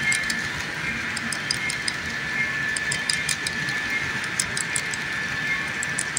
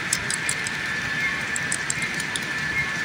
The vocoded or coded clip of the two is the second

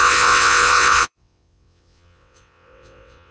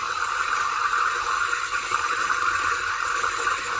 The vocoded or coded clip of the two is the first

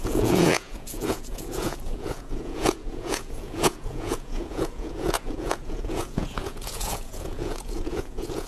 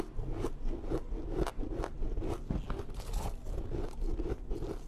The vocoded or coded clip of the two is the first